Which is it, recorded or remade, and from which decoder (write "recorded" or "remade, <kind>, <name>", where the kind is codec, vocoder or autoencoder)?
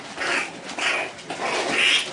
recorded